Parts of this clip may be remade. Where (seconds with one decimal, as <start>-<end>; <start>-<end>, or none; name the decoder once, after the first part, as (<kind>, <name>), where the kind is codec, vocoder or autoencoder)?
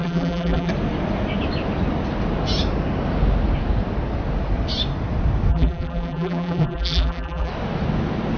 0.0-0.7 (vocoder, BigVGAN v2); 5.5-7.5